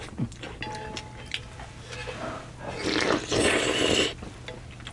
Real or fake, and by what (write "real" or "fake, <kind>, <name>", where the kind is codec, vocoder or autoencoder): real